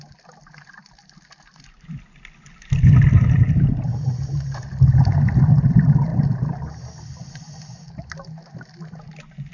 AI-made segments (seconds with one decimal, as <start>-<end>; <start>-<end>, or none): none